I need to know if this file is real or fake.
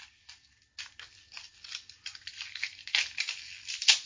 real